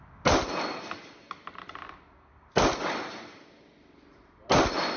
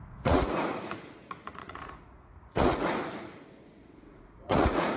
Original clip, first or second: first